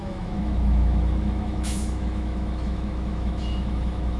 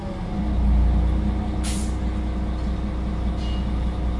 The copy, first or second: first